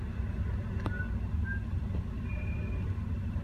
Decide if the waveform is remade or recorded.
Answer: recorded